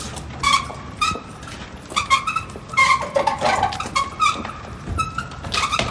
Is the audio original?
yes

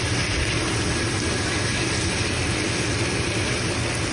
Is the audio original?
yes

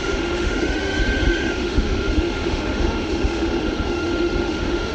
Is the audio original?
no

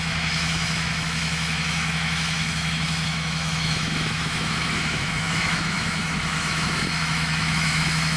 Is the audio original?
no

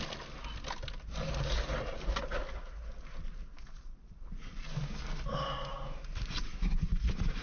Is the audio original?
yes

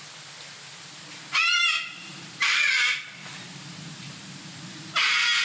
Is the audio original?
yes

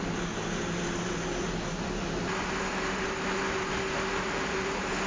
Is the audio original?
yes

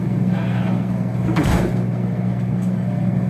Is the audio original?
no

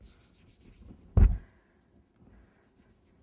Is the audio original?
yes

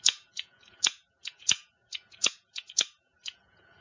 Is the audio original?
no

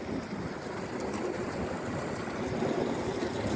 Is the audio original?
yes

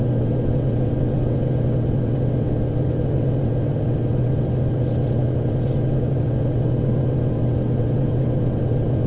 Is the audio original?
no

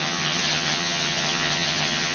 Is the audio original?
no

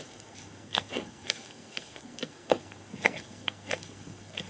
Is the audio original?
no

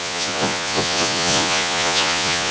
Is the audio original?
no